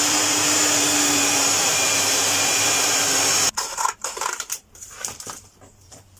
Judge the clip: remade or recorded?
remade